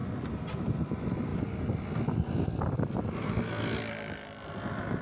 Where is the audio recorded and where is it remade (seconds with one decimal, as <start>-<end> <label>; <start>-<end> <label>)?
0.0-5.0 recorded